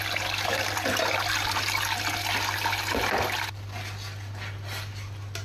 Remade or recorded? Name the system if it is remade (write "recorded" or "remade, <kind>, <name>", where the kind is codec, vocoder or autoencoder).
recorded